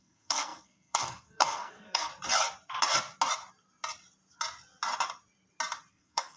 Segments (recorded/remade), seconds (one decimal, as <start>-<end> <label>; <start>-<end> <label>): 0.0-2.1 remade; 2.1-5.9 recorded; 5.9-6.4 remade